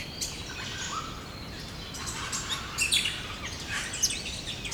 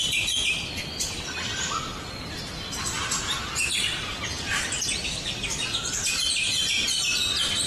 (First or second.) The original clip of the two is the first